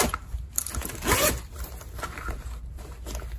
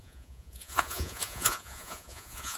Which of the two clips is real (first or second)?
first